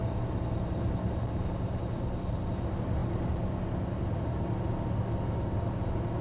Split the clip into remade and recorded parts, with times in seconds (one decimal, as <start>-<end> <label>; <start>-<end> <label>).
0.0-6.2 recorded